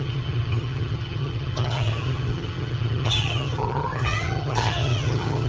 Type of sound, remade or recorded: remade